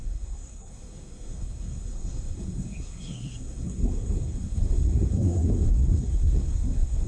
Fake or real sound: fake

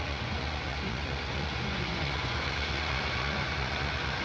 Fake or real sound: fake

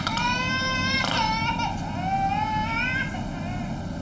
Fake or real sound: real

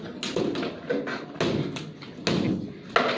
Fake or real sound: real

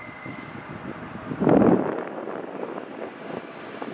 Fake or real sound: real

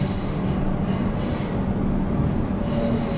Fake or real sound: real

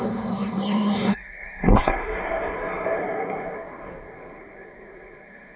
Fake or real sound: fake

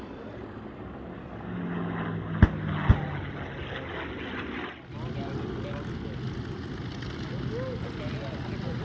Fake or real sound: real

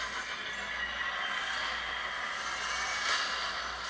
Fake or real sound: real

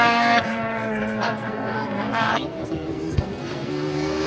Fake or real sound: fake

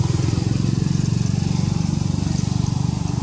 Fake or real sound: real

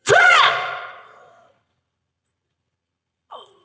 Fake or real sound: fake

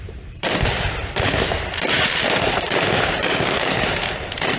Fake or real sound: fake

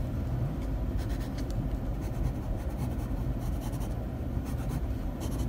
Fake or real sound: fake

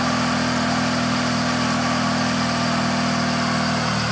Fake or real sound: real